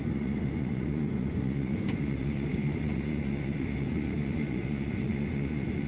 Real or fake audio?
fake